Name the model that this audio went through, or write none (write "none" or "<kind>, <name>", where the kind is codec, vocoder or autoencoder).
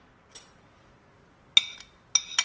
none